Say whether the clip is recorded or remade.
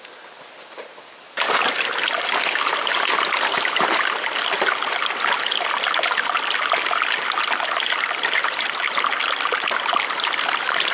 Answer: recorded